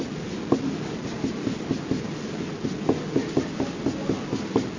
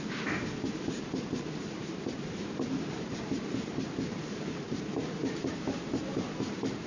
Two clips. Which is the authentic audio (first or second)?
first